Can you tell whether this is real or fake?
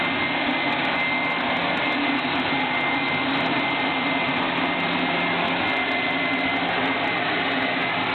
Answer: real